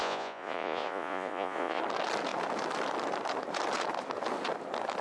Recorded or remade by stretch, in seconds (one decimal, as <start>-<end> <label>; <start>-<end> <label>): 0.0-1.8 remade; 1.8-5.0 recorded